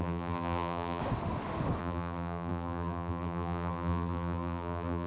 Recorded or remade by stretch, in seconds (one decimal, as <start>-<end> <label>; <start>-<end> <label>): 0.0-1.0 remade; 1.0-1.8 recorded; 1.8-5.1 remade